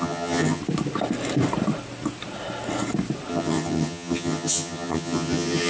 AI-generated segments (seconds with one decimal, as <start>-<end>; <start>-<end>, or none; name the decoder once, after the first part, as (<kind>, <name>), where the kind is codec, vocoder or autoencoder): 0.0-0.6 (vocoder, HiFi-GAN); 3.3-5.7